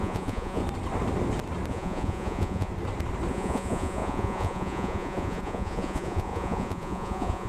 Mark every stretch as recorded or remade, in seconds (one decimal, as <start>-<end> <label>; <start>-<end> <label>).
0.0-0.6 remade; 0.6-1.7 recorded; 1.7-2.7 remade; 2.7-3.3 recorded; 3.3-7.5 remade